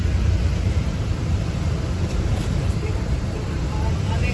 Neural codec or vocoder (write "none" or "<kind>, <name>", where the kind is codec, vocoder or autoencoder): vocoder, BigVGAN v2